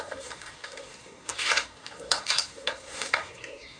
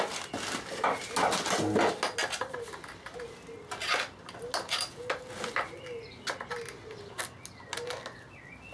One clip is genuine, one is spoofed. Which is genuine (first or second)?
second